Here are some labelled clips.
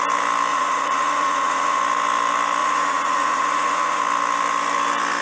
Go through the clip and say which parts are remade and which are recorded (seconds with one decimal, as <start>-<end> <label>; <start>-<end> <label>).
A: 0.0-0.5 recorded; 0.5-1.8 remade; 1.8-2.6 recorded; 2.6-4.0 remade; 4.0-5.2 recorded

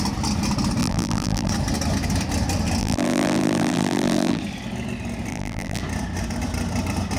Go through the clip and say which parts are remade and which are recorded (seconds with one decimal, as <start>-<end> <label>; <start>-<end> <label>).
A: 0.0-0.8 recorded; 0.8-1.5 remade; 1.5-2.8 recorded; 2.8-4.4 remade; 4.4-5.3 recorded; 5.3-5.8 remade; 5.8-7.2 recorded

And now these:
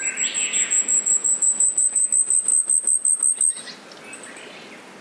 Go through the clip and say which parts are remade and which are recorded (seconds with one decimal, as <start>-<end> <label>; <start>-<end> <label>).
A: 0.0-0.4 recorded; 0.4-2.1 remade; 2.1-5.0 recorded